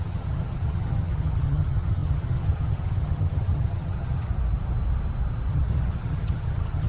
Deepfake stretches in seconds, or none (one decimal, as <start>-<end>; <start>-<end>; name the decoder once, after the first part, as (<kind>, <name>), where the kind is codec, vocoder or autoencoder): 0.0-4.3 (vocoder, HiFi-GAN); 5.5-6.9